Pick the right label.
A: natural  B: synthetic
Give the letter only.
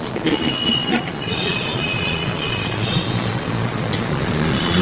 B